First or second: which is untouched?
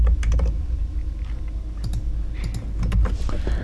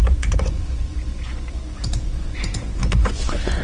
first